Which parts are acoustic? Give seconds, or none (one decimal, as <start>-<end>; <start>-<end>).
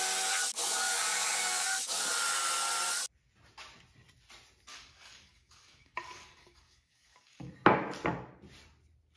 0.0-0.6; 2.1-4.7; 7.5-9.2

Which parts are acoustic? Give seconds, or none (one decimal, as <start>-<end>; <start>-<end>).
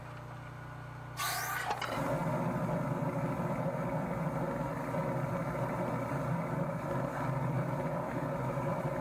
0.0-9.0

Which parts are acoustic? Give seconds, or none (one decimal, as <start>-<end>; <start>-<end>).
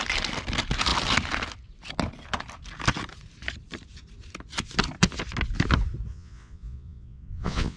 0.0-6.1